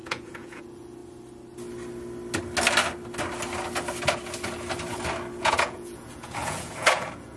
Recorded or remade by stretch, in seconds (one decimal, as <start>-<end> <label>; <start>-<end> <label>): 0.0-1.0 remade; 1.0-5.4 recorded; 5.4-7.4 remade